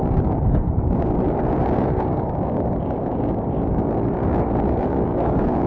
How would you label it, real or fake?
fake